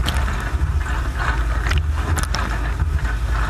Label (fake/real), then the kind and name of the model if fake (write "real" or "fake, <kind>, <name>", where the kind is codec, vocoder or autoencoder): real